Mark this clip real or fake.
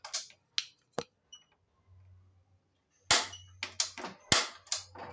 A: real